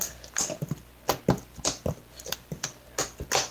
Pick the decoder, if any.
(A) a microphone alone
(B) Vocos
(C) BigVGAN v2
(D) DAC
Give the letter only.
A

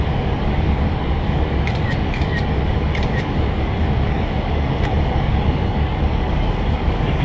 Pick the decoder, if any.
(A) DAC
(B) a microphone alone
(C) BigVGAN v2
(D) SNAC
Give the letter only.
A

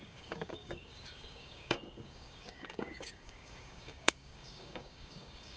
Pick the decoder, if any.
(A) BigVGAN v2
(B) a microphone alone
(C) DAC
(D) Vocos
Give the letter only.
C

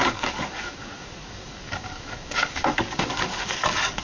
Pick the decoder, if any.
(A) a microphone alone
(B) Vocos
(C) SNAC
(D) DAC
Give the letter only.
D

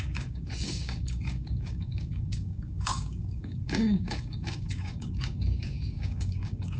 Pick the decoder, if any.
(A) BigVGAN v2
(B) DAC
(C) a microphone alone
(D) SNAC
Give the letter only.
B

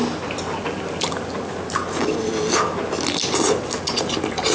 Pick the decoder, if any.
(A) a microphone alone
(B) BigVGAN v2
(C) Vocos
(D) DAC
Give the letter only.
A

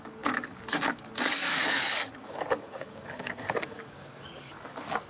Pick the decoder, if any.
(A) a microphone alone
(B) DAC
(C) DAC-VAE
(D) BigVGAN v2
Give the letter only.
B